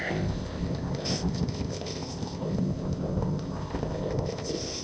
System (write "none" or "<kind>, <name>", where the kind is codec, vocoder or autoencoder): codec, ZipCodec